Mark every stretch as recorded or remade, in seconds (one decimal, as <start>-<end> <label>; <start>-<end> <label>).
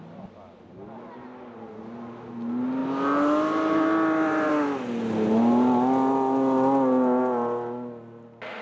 0.0-8.6 recorded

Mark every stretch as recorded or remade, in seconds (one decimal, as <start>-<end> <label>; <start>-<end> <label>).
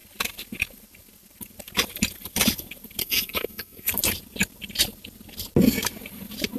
0.0-3.0 recorded; 3.0-3.9 remade; 3.9-6.6 recorded